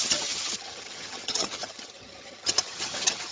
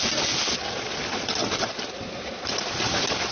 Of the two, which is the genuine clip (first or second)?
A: second